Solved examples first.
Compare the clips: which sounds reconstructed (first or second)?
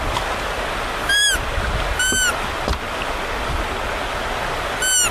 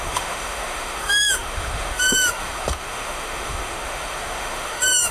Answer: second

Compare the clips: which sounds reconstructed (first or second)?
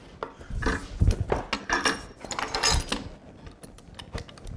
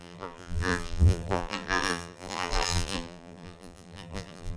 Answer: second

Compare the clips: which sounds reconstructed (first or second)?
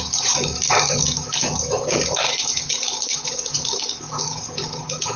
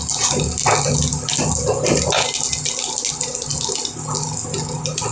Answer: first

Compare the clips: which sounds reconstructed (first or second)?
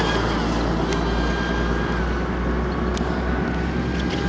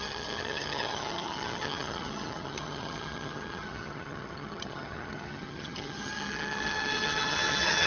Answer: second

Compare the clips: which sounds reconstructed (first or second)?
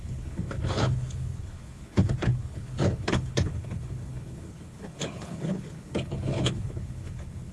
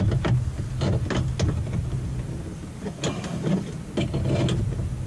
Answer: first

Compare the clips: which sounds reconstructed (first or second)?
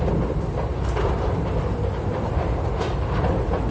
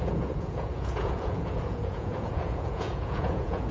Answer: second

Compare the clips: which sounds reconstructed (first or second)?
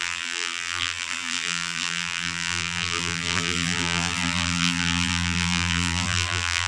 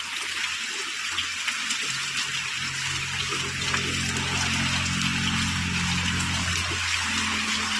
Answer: first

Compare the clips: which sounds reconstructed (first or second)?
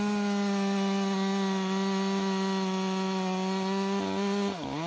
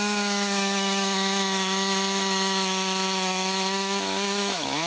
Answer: second